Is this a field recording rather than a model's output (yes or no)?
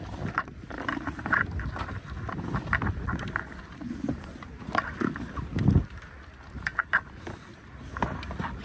yes